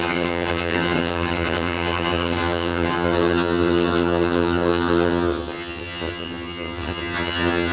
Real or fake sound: fake